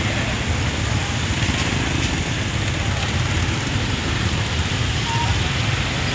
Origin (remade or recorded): recorded